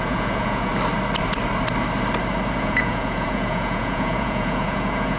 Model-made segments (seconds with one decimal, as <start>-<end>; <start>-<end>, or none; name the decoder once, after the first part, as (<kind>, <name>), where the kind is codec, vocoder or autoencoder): 0.0-0.7 (vocoder, Vocos); 2.5-5.2